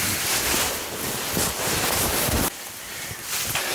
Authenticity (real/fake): real